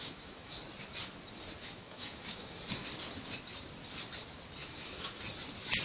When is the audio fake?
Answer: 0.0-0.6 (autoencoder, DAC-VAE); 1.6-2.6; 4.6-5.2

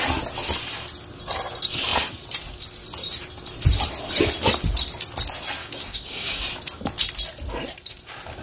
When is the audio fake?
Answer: 5.6-6.4 (codec, DAC)

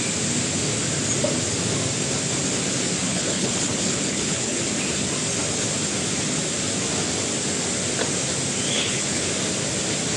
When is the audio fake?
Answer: 3.1-4.6 (codec, HILCodec); 8.8-9.3

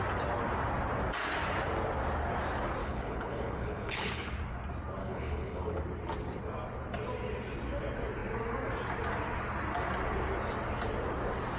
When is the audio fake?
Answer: 2.8-4.3 (codec, HILCodec); 5.0-5.8

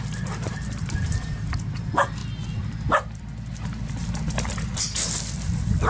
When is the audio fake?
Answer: 0.0-2.2 (vocoder, BigVGAN v2)

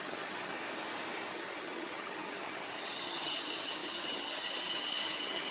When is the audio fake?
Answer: 0.0-0.5 (vocoder, HiFi-GAN); 1.3-5.5